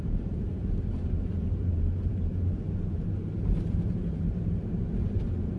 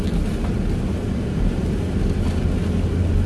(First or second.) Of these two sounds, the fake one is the first